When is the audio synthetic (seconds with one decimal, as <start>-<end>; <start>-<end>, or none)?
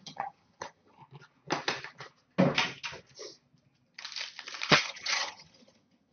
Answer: 0.0-1.0; 4.7-6.1